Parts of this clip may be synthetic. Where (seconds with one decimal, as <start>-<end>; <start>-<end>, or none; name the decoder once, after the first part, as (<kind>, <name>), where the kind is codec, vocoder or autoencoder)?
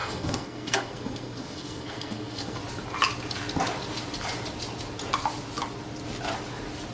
0.0-2.6 (codec, SNAC)